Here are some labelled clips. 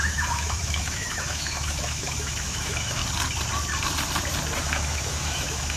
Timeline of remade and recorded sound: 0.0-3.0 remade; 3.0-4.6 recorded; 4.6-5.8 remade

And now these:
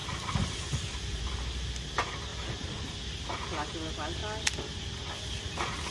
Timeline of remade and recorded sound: 0.0-1.3 remade; 1.3-2.3 recorded; 2.3-2.8 remade; 2.8-5.9 recorded

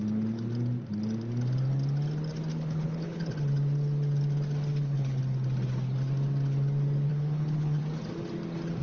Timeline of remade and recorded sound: 0.0-2.5 recorded; 2.5-3.3 remade; 3.3-4.7 recorded; 4.7-5.2 remade; 5.2-7.1 recorded; 7.1-7.8 remade; 7.8-8.8 recorded

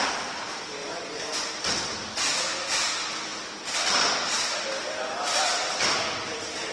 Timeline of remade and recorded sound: 0.0-0.8 recorded; 0.8-1.5 remade; 1.5-6.7 recorded